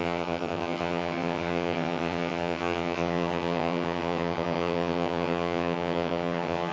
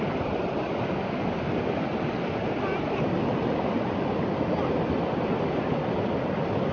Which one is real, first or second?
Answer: second